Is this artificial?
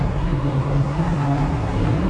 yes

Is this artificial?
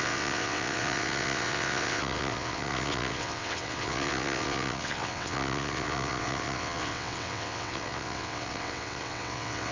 yes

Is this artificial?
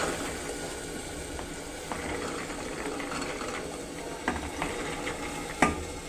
no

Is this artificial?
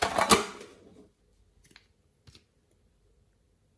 no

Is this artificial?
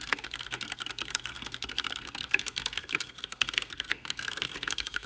yes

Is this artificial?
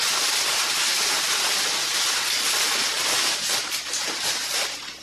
no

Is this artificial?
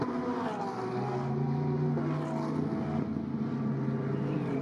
no